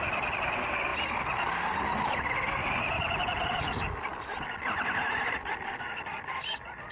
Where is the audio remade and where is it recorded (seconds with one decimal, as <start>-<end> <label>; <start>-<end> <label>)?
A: 0.0-6.9 recorded